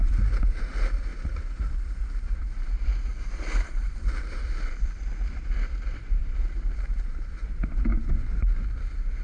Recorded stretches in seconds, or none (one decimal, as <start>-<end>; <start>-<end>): 0.0-1.1; 2.6-3.1; 5.0-6.2; 8.1-9.2